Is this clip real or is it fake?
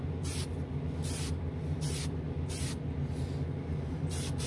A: real